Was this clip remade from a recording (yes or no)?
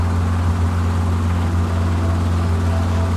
no